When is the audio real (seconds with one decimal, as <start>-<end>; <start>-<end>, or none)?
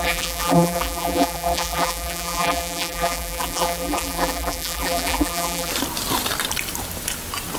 5.7-7.6